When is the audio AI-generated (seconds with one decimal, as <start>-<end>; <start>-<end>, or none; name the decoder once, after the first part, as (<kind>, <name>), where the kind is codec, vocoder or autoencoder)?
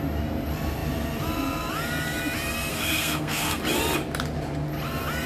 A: 2.7-3.6 (codec, SNAC)